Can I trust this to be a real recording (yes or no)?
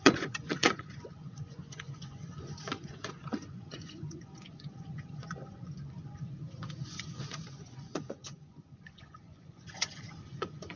no